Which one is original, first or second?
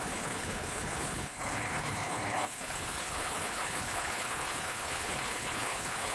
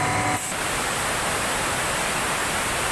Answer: second